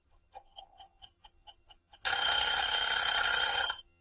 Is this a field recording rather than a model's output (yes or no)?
no